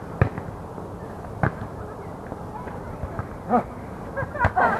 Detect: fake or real real